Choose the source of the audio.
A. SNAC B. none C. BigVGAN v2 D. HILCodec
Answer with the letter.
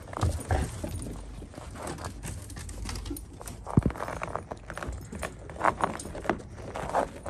B